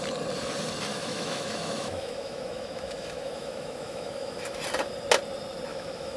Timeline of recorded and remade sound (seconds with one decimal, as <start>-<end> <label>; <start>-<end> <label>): 0.0-0.9 recorded; 0.9-4.6 remade; 4.6-5.7 recorded; 5.7-6.2 remade